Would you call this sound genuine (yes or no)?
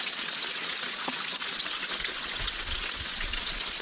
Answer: no